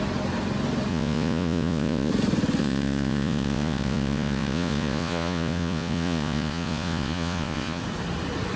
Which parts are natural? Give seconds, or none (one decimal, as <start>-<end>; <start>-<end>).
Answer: 0.0-0.9; 2.1-2.6; 7.8-8.6